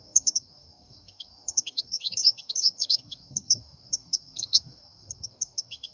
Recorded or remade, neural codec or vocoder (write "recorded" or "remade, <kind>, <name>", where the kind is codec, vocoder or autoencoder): remade, codec, DAC